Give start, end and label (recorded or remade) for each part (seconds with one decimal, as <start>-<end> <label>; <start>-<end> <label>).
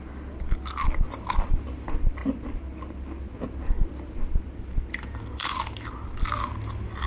0.0-7.1 recorded